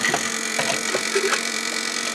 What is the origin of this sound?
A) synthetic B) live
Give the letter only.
A